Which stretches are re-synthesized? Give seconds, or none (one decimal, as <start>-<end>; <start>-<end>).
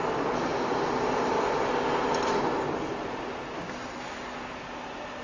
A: none